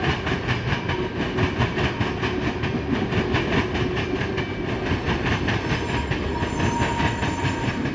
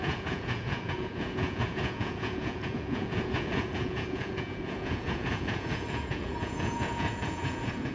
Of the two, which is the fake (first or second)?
second